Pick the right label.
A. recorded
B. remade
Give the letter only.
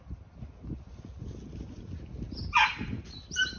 A